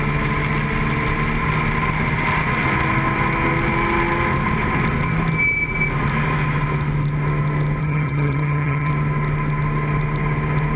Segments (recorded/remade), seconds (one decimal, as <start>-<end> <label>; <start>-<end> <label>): 0.0-7.8 recorded; 7.8-8.9 remade; 8.9-10.8 recorded